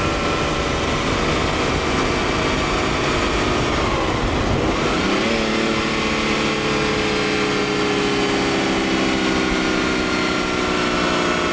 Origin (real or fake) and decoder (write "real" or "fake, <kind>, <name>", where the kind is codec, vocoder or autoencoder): real